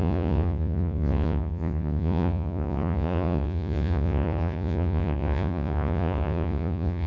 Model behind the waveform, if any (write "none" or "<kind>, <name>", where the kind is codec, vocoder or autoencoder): vocoder, Vocos